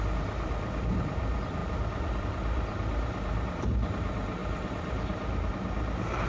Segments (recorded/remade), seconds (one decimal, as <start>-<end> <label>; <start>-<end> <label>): 0.0-6.3 remade